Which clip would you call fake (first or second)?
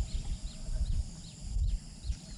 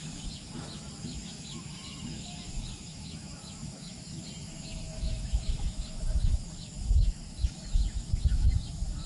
second